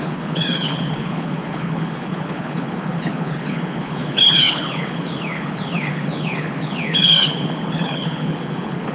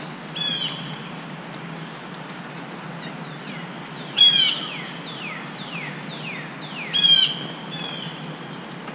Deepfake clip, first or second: first